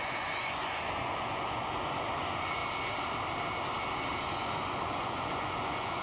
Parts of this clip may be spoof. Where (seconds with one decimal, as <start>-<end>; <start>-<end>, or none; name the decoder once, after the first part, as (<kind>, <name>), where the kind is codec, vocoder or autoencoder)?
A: 0.0-2.6 (vocoder, Vocos); 4.2-6.0